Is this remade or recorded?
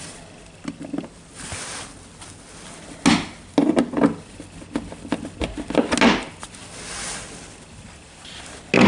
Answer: recorded